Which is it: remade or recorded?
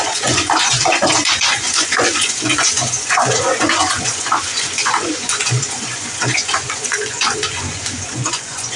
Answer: remade